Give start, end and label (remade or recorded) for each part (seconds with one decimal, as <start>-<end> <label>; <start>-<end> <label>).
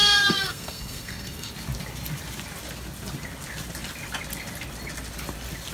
0.0-1.5 remade; 1.5-5.7 recorded